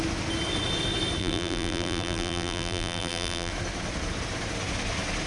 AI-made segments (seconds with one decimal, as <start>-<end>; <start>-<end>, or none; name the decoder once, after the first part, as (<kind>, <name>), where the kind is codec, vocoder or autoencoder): 1.2-3.5 (vocoder, BigVGAN v2)